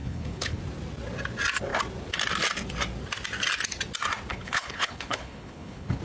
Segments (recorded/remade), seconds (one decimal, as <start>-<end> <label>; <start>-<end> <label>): 0.0-0.6 remade; 0.6-4.3 recorded; 4.3-6.0 remade